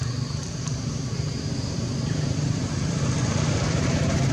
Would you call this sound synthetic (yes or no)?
yes